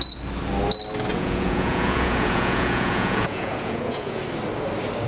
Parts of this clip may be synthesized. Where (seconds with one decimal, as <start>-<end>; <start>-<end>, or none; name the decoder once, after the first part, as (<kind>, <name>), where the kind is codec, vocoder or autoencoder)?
1.1-4.2 (vocoder, Vocos)